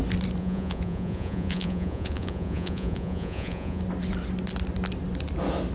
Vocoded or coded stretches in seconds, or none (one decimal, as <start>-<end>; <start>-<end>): 0.4-3.8